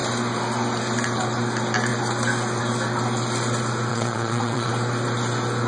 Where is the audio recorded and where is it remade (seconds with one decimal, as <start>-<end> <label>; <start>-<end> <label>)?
0.0-3.9 recorded; 3.9-4.7 remade; 4.7-5.7 recorded